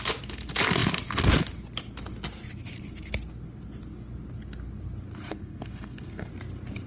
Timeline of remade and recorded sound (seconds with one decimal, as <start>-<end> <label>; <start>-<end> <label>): 0.0-5.3 recorded; 5.3-6.3 remade; 6.3-6.9 recorded